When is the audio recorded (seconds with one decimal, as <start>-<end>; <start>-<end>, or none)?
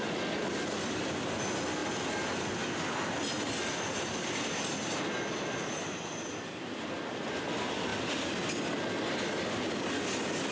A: 0.0-10.5